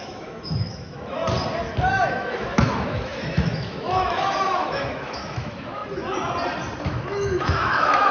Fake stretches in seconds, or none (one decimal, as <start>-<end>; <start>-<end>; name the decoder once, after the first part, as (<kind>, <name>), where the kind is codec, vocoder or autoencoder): 0.0-1.2 (autoencoder, DAC-VAE); 1.9-5.8; 6.8-8.1

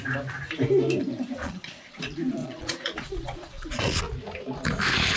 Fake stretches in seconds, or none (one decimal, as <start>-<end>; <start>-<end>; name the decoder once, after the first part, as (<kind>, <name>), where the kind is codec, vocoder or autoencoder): 1.4-2.0 (vocoder, Vocos); 2.4-4.0

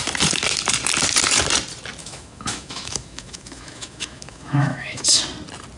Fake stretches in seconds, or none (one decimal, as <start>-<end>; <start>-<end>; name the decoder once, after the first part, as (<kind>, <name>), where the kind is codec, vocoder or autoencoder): 2.0-5.2 (autoencoder, DAC-VAE)

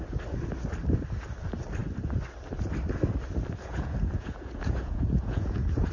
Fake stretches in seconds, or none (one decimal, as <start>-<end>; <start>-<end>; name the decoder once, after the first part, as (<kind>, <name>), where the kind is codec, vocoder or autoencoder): 3.6-5.9 (vocoder, Vocos)

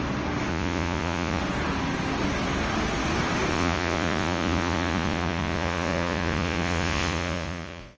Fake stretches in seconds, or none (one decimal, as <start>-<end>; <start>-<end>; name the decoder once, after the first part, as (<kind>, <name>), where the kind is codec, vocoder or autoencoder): 0.5-1.4 (vocoder, Vocos); 3.5-8.0

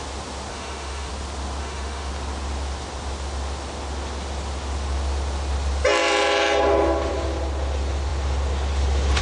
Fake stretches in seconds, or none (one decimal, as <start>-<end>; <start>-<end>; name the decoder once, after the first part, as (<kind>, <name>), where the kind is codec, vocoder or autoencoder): 0.5-1.1 (autoencoder, DAC-VAE); 1.6-2.1

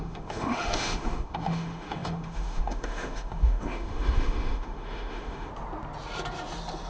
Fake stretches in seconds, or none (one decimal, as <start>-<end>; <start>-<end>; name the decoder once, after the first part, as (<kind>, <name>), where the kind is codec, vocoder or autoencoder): 0.0-5.5 (autoencoder, DAC-VAE)